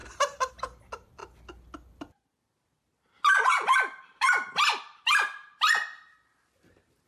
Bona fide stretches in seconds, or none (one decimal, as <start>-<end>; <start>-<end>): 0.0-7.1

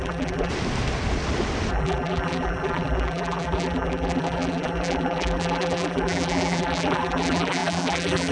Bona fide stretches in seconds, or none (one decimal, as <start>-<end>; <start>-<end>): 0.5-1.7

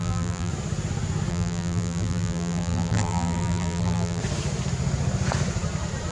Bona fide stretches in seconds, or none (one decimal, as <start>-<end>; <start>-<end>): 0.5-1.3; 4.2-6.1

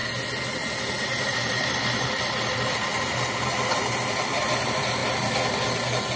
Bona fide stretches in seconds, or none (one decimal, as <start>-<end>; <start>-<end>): 0.0-0.9; 2.9-4.0; 5.0-6.2

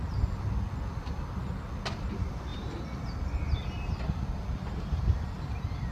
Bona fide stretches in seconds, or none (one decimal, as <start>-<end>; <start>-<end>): 0.0-5.9

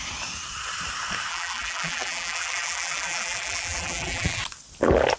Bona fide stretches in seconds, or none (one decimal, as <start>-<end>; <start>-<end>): 0.0-1.3; 4.4-5.2